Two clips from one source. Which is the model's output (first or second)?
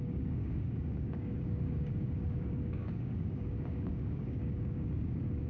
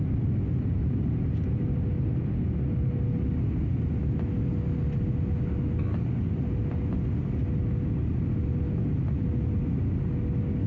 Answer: first